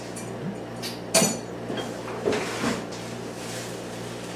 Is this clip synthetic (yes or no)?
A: no